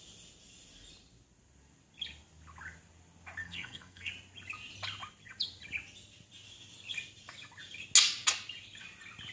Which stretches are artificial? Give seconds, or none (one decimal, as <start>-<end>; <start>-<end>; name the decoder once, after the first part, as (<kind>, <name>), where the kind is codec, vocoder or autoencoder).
3.4-4.1 (codec, SNAC)